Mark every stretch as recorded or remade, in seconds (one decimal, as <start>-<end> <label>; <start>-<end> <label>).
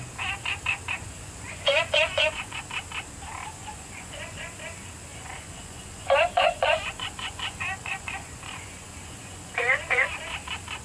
0.0-1.0 recorded; 1.0-2.6 remade; 2.6-3.6 recorded; 3.6-4.5 remade; 4.5-5.1 recorded; 5.1-10.1 remade; 10.1-10.8 recorded